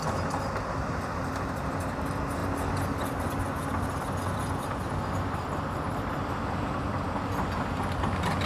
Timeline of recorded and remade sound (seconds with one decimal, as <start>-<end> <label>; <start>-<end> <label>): 0.0-8.5 recorded